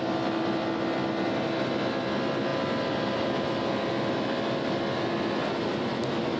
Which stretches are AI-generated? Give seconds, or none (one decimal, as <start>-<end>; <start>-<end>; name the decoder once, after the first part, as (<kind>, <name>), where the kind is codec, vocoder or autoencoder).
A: none